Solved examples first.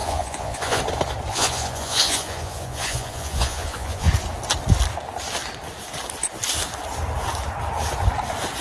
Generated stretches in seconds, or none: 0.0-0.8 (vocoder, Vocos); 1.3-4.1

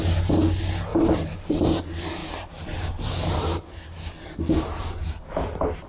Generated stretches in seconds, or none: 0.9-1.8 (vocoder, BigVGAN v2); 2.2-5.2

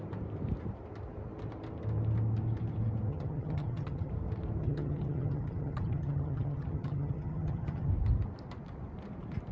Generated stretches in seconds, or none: 3.1-4.1 (vocoder, HiFi-GAN); 4.6-7.9

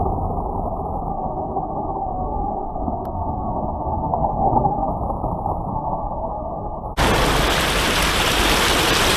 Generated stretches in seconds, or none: 1.1-4.9 (autoencoder, DAC-VAE); 5.7-6.8